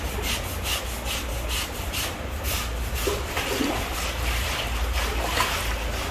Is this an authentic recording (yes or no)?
yes